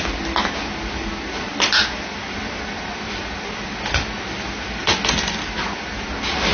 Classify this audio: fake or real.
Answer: real